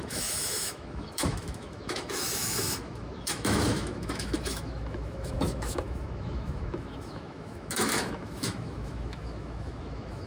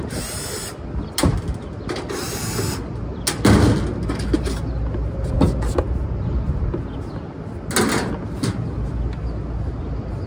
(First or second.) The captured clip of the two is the second